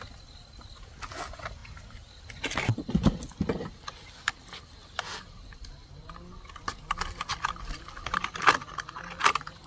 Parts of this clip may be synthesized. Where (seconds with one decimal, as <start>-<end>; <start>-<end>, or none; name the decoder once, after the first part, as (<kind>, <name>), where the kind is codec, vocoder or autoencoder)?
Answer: 7.3-8.5 (vocoder, BigVGAN v2)